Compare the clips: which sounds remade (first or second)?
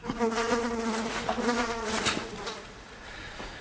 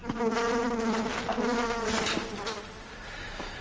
first